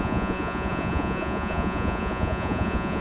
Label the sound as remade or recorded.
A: remade